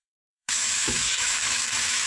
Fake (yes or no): yes